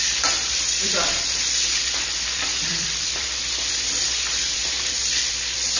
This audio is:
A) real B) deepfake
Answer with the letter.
B